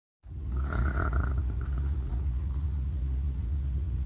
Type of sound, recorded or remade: remade